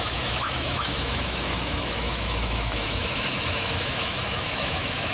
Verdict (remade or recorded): remade